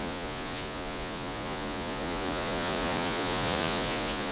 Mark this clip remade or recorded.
remade